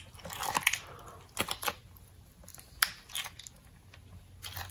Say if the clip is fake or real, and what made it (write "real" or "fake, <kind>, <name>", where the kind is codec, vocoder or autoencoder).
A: real